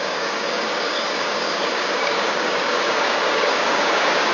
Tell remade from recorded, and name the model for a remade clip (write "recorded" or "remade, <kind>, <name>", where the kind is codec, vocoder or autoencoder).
remade, codec, DAC